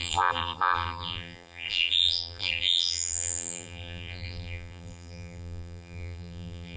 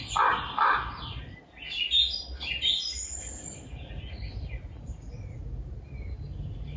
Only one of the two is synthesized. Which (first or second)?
first